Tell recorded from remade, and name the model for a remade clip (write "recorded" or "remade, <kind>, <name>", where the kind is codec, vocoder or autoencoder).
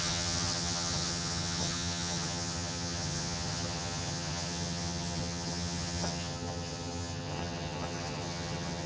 remade, vocoder, HiFi-GAN